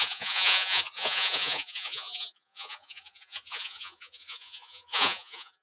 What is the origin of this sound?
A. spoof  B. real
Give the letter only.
A